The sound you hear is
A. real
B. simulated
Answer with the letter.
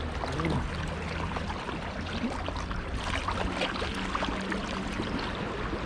A